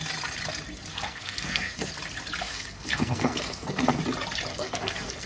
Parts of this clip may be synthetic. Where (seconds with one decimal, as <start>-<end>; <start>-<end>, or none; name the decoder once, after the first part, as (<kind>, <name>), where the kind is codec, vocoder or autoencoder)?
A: 0.9-1.9 (codec, SNAC); 2.4-4.0; 4.5-5.3